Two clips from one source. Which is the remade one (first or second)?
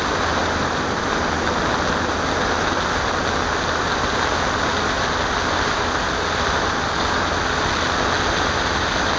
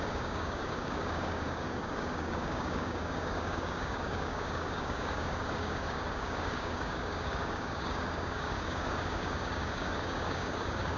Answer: second